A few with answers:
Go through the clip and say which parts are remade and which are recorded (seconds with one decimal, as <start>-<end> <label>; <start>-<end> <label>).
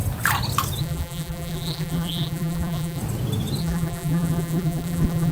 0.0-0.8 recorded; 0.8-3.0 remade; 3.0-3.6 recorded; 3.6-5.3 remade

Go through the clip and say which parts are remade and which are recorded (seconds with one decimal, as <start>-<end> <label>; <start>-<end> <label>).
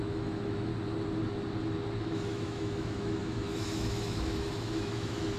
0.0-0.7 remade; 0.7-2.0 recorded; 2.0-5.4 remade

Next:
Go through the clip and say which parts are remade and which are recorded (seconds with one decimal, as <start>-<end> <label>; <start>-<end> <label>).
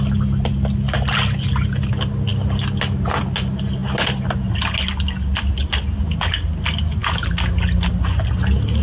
0.0-8.8 recorded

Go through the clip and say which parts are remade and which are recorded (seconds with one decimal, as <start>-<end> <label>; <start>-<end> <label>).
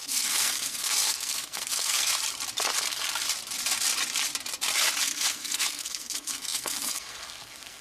0.0-2.1 remade; 2.1-5.0 recorded; 5.0-7.8 remade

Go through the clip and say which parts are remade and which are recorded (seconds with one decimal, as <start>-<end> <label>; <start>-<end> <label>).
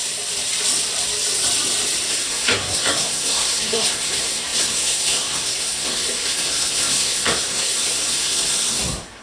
0.0-2.1 recorded; 2.1-9.2 remade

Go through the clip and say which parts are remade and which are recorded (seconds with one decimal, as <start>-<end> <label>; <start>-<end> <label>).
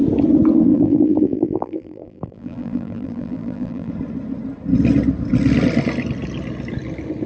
0.0-0.7 recorded; 0.7-3.9 remade; 3.9-7.3 recorded